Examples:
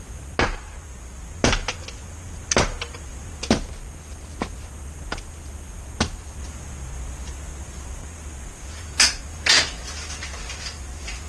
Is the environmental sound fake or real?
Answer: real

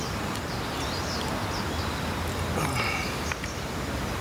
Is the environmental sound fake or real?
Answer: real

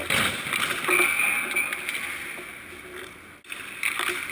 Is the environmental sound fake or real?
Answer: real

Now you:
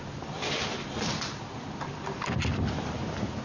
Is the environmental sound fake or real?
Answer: real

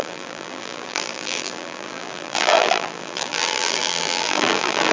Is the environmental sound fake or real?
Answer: fake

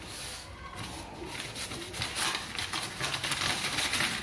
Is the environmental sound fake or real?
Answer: real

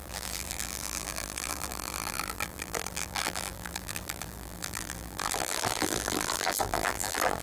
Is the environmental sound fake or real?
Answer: fake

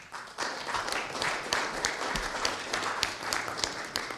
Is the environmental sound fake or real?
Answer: fake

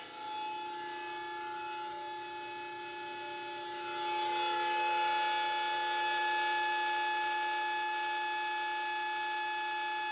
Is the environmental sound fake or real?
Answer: real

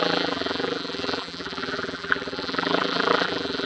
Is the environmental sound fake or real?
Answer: fake